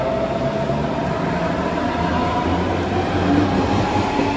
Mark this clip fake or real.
real